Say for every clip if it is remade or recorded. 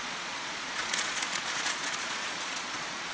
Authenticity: remade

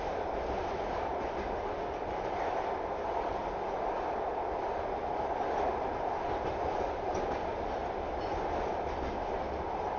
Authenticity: recorded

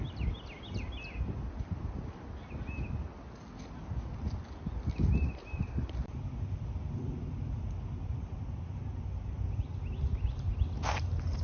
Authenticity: recorded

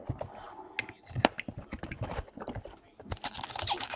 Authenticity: recorded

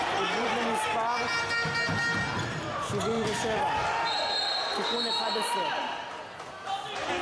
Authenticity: recorded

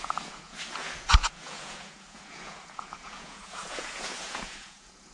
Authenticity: remade